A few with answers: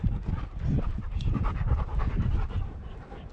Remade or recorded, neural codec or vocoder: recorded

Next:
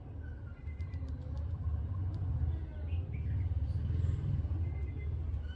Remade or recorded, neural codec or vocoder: recorded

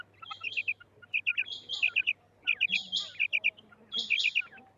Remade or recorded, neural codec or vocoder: recorded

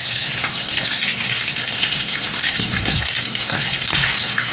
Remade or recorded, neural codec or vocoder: remade, codec, SNAC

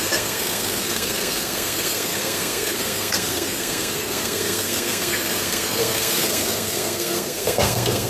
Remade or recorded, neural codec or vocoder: remade, codec, SNAC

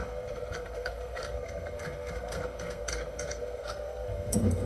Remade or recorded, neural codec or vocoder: remade, codec, SNAC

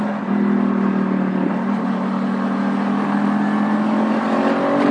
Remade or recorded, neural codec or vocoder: recorded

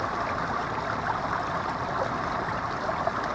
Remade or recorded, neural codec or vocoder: recorded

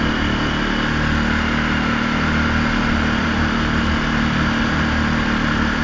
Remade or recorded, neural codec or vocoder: recorded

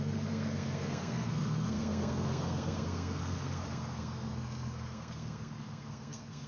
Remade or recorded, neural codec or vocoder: remade, codec, SNAC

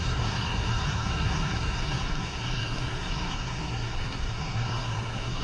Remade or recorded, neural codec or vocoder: remade, codec, SNAC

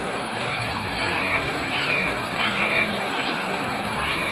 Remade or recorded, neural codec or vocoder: remade, codec, SNAC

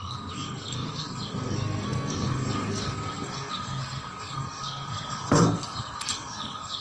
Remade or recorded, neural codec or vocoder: remade, codec, SNAC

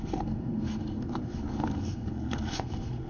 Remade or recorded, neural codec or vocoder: remade, codec, SNAC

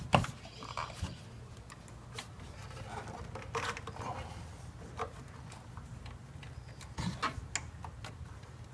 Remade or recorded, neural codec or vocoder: recorded